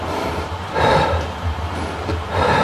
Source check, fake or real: fake